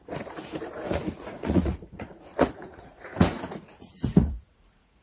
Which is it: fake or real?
fake